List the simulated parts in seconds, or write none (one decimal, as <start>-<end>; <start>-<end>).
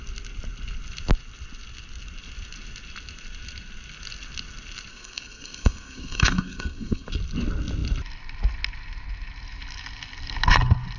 4.9-7.1